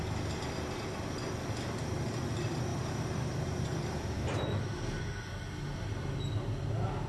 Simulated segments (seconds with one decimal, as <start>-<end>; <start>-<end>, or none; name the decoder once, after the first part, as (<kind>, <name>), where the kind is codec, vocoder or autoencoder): 2.7-4.4 (vocoder, BigVGAN v2)